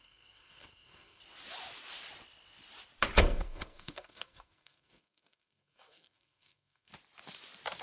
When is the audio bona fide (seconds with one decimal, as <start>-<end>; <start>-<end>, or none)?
1.2-3.2; 6.9-7.8